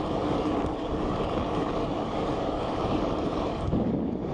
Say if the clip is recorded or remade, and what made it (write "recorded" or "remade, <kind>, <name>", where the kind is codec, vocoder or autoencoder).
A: remade, codec, DAC